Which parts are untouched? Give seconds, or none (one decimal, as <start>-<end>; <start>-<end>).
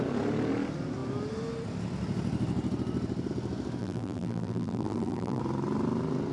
0.0-3.8; 5.4-6.3